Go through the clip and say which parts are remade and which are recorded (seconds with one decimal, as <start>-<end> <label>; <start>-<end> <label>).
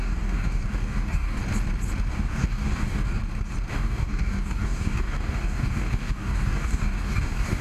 0.0-1.4 remade; 1.4-2.1 recorded; 2.1-3.2 remade; 3.2-3.7 recorded; 3.7-7.6 remade